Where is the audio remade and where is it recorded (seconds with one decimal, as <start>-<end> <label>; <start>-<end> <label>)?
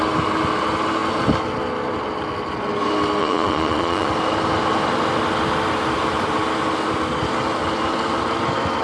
0.0-3.2 recorded; 3.2-4.1 remade; 4.1-8.8 recorded